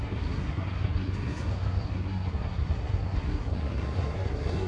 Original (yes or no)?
no